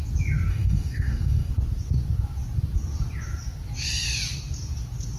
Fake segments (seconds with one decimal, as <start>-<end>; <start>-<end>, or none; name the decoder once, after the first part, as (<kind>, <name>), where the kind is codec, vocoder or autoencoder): 0.5-1.5 (codec, DAC)